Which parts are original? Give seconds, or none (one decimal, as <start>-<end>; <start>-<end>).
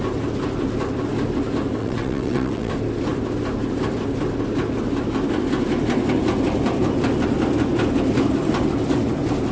0.0-1.8; 2.7-9.5